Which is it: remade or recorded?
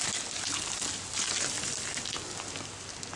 recorded